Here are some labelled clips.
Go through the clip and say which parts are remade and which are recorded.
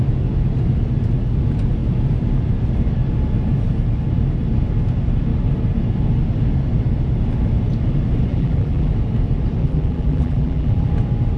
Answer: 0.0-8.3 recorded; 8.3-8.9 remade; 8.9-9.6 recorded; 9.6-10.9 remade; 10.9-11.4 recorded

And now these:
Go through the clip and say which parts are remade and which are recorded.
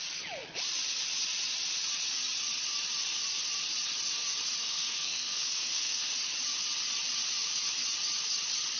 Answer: 0.0-4.6 recorded; 4.6-6.1 remade; 6.1-8.8 recorded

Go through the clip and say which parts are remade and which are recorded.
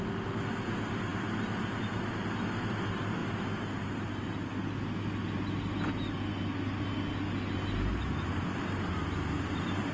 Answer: 0.0-9.9 recorded